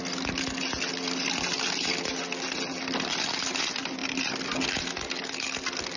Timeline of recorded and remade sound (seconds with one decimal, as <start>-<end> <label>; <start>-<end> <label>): 0.0-6.0 recorded